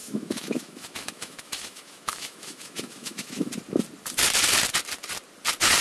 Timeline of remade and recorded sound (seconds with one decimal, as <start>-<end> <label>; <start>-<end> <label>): 0.0-3.5 remade; 3.5-5.8 recorded